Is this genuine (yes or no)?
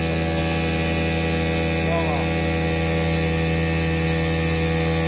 yes